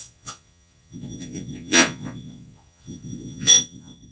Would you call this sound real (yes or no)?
no